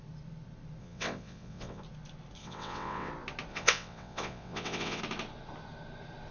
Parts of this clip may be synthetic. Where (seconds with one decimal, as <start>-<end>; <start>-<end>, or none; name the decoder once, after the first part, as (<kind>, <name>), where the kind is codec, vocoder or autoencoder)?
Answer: 0.8-1.8 (vocoder, WaveNeXt); 2.4-3.1; 3.5-5.0